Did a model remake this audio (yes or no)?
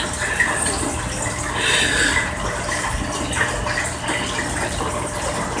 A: no